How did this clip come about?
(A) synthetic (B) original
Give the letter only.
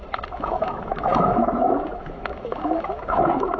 A